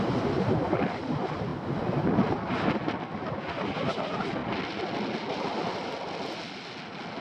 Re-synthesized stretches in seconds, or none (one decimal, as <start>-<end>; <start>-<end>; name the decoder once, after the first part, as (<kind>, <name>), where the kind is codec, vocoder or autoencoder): none